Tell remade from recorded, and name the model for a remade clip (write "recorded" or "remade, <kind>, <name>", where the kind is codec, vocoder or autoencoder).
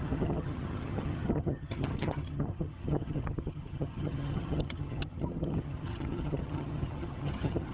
remade, vocoder, HiFi-GAN